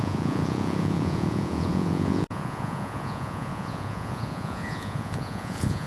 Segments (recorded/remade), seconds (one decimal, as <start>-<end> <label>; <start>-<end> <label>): 0.0-5.9 remade